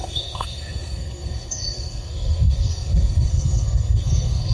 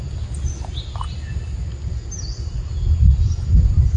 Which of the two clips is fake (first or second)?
first